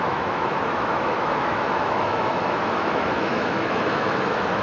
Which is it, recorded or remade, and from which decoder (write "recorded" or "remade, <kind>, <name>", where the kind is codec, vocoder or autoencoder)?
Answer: remade, autoencoder, DAC-VAE